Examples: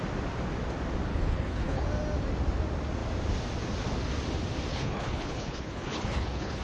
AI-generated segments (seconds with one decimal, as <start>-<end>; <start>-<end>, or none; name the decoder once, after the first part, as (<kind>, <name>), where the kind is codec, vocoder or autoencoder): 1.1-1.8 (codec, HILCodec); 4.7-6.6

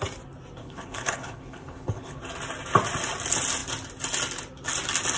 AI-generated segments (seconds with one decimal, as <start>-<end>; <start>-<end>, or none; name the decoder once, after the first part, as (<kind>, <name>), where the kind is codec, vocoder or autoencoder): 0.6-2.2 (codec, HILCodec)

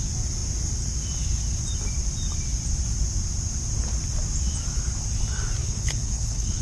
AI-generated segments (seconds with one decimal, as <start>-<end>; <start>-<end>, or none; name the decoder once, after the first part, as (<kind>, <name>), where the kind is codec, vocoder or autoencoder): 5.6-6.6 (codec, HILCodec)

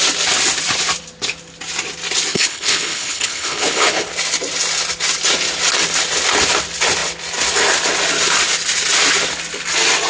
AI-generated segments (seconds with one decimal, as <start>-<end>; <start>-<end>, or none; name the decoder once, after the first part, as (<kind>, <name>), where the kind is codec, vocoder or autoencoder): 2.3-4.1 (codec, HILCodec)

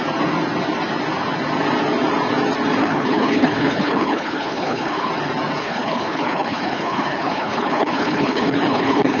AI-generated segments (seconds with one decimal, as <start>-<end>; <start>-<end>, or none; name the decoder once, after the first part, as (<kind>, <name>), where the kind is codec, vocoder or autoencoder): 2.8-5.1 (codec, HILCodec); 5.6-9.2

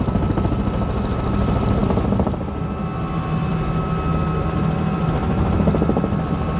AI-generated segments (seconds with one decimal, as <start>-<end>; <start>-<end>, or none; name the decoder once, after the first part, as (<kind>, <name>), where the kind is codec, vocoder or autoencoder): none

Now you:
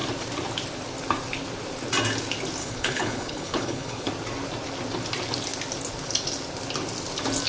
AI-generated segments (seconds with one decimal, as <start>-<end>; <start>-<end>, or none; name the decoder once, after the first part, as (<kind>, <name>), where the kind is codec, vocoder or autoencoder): 2.6-4.1 (codec, HILCodec)

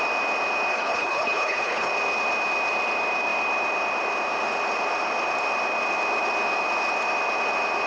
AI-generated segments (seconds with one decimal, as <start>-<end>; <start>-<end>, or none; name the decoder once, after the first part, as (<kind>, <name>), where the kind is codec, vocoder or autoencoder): 0.7-1.9 (codec, HILCodec)